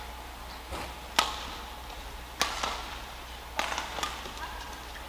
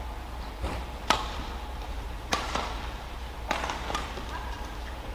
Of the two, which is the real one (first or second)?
first